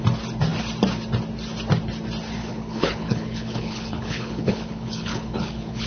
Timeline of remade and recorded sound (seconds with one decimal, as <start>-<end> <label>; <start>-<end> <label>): 0.0-2.4 recorded; 2.4-5.9 remade